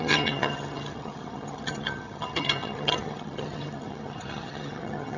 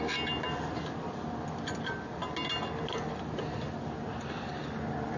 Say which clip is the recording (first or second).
second